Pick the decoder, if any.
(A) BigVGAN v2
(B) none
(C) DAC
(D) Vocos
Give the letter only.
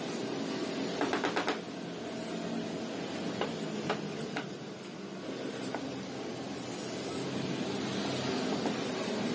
B